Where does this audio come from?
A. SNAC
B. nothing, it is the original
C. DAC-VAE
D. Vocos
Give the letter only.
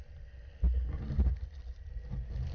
B